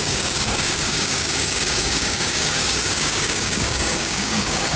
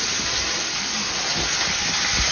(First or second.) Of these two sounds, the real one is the second